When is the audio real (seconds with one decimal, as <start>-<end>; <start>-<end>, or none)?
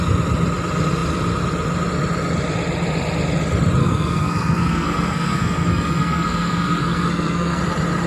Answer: 0.0-3.8; 7.6-8.1